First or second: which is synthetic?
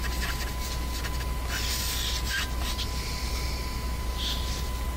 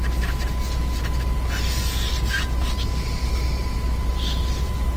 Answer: second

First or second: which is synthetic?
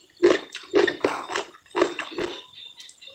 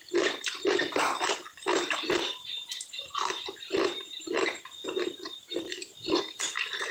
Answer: second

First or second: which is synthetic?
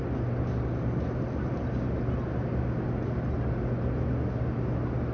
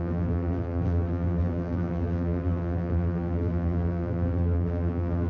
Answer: second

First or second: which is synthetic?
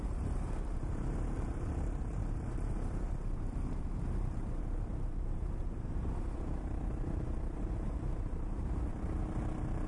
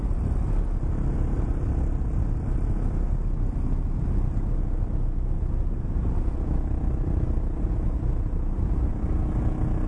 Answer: first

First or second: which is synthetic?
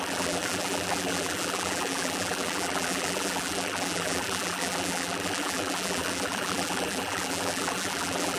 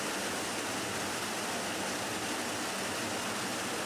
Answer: first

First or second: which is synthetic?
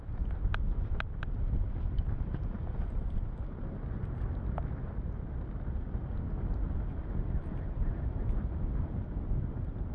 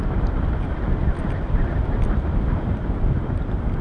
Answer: second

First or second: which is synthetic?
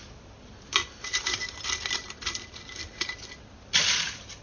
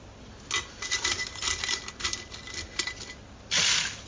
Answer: first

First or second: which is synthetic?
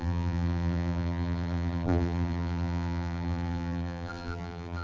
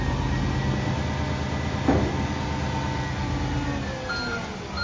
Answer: first